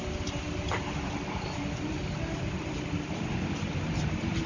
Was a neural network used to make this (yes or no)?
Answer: no